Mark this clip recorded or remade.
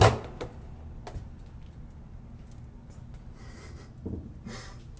recorded